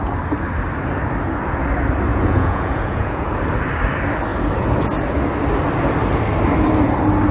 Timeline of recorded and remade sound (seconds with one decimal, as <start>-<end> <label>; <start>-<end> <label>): 0.0-2.1 recorded; 2.1-3.3 remade; 3.3-7.3 recorded